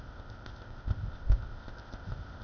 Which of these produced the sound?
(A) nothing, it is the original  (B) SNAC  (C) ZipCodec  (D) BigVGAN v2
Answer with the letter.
C